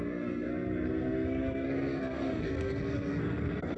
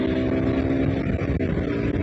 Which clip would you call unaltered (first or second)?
second